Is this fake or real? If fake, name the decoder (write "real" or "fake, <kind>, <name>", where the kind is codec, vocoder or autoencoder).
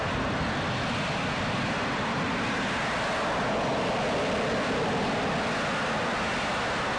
real